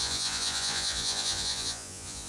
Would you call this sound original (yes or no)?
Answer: no